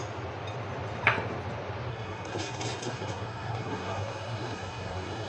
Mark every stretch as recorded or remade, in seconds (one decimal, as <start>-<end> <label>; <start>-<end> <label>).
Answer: 0.0-1.9 recorded; 1.9-5.3 remade